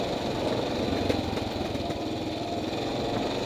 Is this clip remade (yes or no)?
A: no